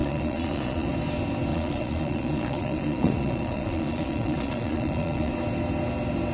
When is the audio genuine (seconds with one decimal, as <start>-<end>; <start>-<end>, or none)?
0.9-1.5; 5.3-6.3